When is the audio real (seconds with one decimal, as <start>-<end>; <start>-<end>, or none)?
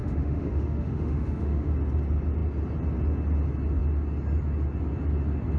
1.7-5.6